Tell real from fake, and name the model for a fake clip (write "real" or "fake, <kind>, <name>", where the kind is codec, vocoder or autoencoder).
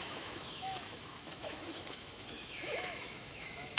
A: fake, autoencoder, DAC-VAE